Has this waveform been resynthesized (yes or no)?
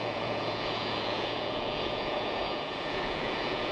yes